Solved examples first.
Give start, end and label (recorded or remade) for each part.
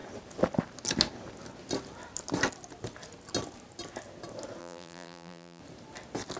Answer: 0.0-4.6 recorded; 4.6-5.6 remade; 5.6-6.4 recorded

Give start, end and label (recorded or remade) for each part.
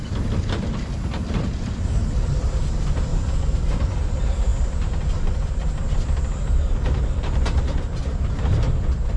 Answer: 0.0-3.1 remade; 3.1-3.9 recorded; 3.9-9.2 remade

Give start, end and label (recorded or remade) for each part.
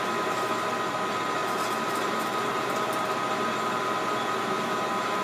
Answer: 0.0-1.4 recorded; 1.4-2.9 remade; 2.9-5.2 recorded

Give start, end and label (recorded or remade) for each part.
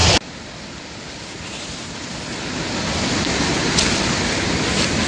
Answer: 0.0-3.1 remade; 3.1-5.1 recorded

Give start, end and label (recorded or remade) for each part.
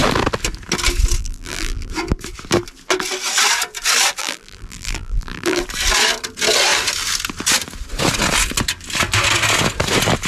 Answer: 0.0-1.2 recorded; 1.2-1.9 remade; 1.9-4.2 recorded; 4.2-5.6 remade; 5.6-10.3 recorded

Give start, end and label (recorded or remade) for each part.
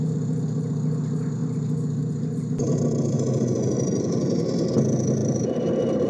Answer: 0.0-2.6 recorded; 2.6-3.4 remade; 3.4-5.2 recorded; 5.2-6.1 remade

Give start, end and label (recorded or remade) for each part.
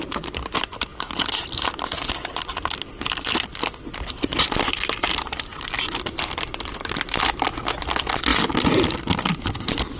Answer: 0.0-0.9 recorded; 0.9-2.1 remade; 2.1-5.5 recorded; 5.5-7.6 remade; 7.6-8.3 recorded; 8.3-9.3 remade; 9.3-10.0 recorded